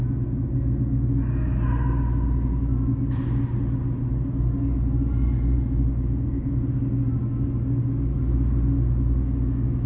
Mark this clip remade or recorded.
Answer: recorded